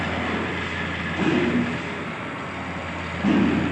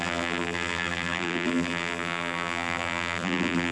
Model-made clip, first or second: second